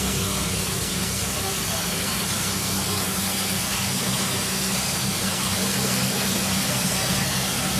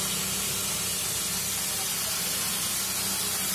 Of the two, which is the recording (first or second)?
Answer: second